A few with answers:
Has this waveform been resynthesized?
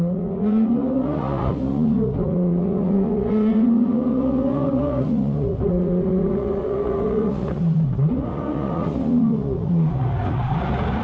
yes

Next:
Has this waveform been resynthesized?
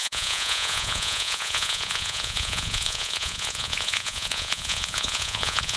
yes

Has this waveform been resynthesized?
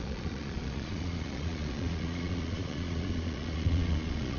yes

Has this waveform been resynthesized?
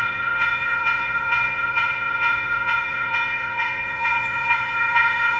yes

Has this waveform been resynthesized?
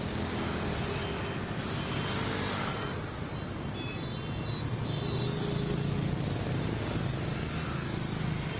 no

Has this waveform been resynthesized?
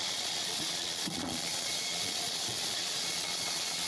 yes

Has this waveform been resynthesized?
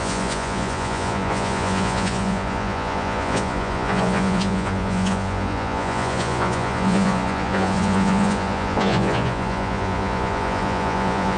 yes